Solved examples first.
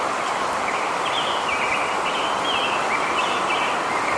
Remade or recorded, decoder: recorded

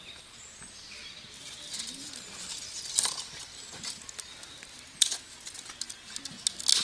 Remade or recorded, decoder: recorded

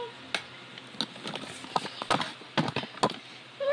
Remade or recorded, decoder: recorded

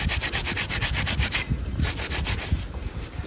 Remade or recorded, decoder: recorded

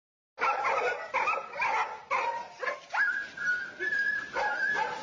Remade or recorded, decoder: recorded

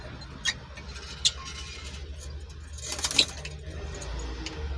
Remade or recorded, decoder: recorded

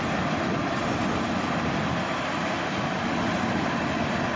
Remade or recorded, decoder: recorded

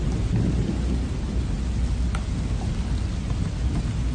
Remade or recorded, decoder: recorded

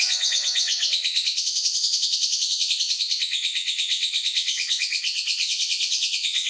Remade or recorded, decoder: remade, vocoder, WaveNeXt